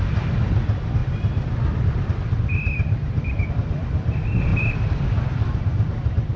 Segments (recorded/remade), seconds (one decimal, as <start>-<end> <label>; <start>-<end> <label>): 0.0-6.4 remade